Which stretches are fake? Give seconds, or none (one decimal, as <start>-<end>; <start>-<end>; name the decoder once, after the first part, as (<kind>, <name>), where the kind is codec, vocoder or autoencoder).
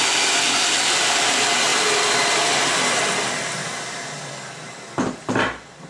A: none